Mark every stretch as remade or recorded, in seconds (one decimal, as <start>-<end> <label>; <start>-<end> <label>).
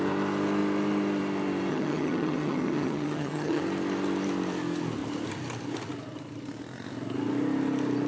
0.0-1.7 recorded; 1.7-3.6 remade; 3.6-8.1 recorded